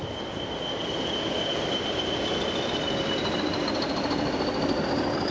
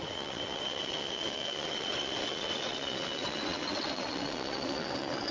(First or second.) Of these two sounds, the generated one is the second